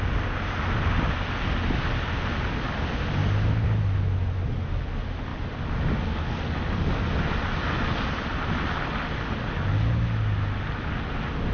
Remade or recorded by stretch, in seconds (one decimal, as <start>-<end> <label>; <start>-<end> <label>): 0.0-11.5 recorded